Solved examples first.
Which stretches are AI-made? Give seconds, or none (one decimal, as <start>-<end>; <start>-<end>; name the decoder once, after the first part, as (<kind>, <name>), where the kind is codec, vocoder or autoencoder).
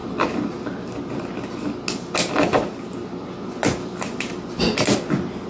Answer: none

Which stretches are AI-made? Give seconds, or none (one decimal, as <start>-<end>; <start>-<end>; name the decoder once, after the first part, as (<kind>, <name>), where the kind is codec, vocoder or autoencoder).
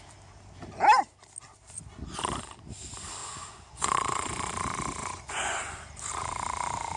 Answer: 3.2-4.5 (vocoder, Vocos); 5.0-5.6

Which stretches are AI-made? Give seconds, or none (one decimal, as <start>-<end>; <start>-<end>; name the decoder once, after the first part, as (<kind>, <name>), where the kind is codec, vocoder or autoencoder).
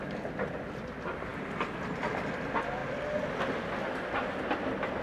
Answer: none